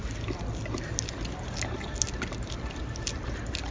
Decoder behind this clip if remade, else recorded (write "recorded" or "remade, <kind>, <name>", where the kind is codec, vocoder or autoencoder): recorded